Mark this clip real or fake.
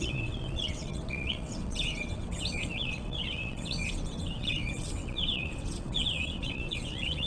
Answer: fake